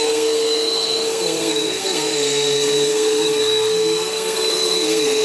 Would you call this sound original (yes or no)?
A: no